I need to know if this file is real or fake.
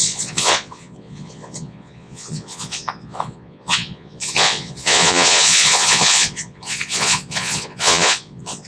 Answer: fake